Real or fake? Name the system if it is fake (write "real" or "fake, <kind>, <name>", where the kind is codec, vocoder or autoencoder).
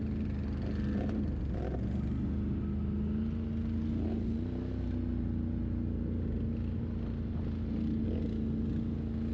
real